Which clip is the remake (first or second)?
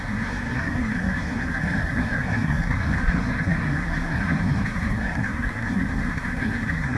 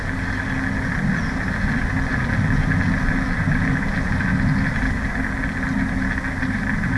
first